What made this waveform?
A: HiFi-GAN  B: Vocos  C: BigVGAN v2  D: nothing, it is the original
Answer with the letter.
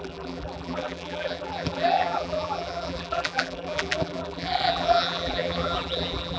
C